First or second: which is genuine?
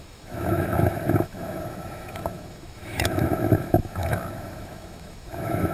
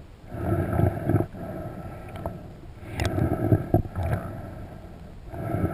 second